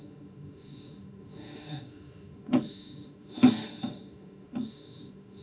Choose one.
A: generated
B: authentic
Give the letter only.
A